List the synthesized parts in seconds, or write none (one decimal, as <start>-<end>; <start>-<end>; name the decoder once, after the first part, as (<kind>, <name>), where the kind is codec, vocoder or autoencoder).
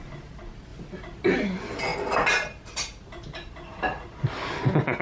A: none